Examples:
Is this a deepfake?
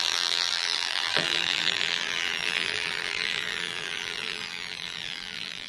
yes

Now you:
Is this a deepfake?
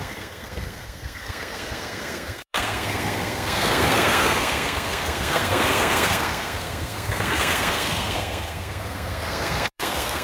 yes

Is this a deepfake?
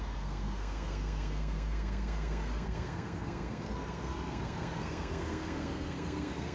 yes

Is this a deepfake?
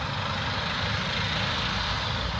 no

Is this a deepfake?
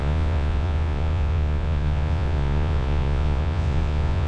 yes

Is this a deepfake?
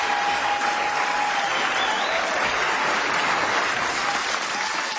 no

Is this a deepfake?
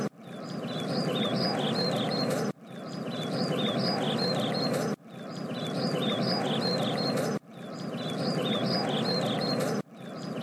no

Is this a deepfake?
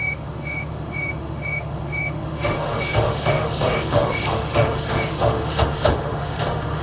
yes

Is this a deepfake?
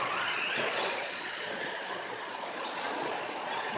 yes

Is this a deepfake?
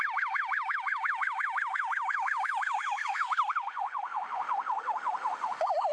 yes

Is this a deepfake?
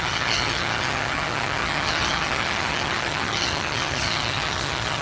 yes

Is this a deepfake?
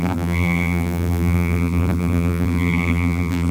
yes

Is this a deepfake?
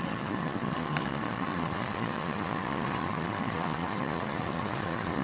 yes